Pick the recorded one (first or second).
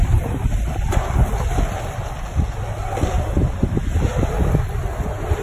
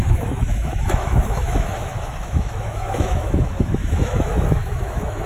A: first